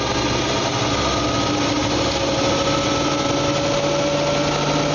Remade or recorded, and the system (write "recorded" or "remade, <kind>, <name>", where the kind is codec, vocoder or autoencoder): recorded